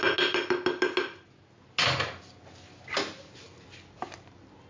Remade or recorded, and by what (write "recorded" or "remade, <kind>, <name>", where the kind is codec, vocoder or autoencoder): recorded